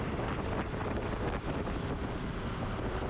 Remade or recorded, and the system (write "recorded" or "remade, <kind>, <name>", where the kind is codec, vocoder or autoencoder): recorded